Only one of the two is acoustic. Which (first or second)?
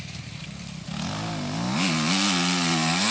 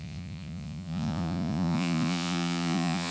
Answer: first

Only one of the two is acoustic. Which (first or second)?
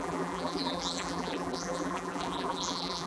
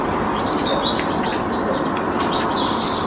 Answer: second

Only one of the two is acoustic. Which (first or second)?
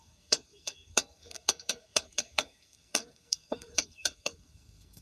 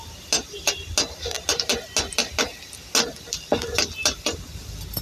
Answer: second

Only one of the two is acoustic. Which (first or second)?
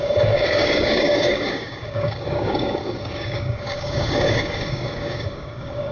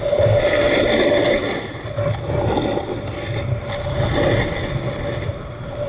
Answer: second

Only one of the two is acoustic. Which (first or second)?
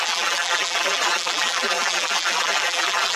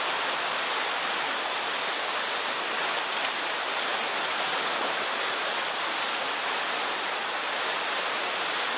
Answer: second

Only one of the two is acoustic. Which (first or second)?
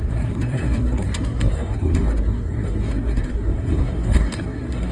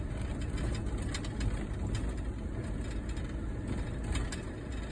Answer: second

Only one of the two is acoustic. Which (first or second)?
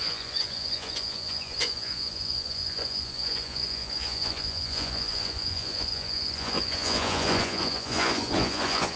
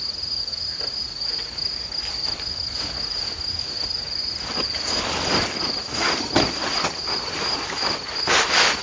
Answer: second